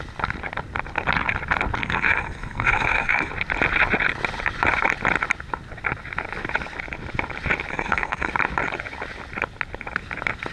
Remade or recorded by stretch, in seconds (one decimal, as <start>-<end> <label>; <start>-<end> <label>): 0.0-1.8 recorded; 1.8-3.3 remade; 3.3-7.7 recorded; 7.7-8.3 remade; 8.3-10.5 recorded